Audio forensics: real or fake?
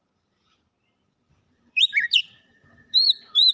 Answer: fake